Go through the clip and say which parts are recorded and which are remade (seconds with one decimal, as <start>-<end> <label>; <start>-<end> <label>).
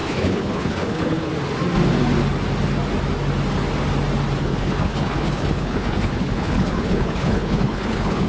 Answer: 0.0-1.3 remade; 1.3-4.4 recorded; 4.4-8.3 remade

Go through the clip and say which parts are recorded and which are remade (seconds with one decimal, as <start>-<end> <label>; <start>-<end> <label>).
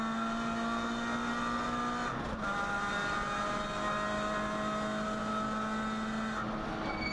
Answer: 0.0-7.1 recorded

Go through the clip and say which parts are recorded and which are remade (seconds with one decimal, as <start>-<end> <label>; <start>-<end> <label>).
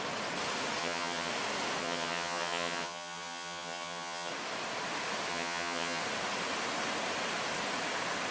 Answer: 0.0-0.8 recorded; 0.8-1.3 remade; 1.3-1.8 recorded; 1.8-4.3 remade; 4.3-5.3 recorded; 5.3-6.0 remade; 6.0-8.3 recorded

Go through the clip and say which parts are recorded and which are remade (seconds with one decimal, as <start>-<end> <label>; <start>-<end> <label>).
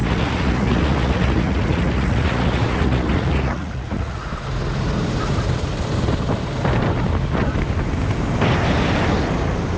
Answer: 0.0-4.3 remade; 4.3-9.8 recorded